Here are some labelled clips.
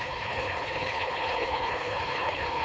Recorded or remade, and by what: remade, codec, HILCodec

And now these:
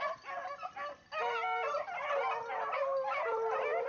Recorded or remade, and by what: recorded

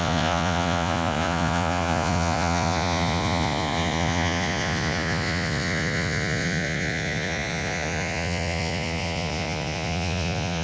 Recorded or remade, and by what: remade, vocoder, Vocos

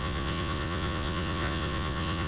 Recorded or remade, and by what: remade, vocoder, Vocos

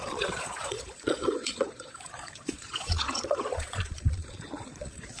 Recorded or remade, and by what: remade, vocoder, Vocos